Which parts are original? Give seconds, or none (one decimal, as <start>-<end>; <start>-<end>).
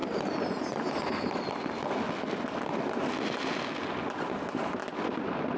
0.0-5.6